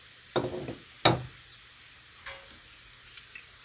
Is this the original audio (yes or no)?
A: yes